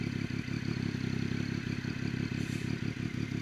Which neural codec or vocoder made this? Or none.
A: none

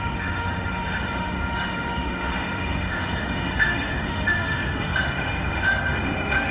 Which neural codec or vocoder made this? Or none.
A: autoencoder, DAC-VAE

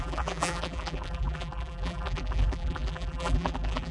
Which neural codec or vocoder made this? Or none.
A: vocoder, BigVGAN v2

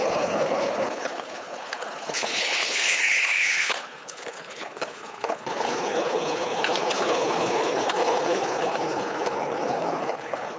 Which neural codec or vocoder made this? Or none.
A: codec, HILCodec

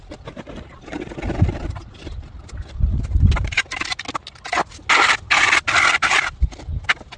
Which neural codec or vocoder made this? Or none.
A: none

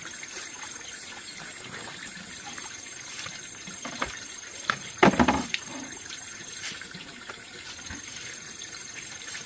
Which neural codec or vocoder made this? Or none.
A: vocoder, BigVGAN v2